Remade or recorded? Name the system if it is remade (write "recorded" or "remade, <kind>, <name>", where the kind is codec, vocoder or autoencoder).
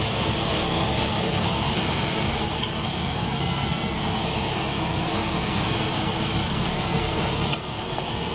remade, codec, SNAC